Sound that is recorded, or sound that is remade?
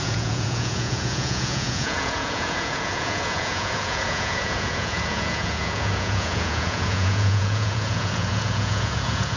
remade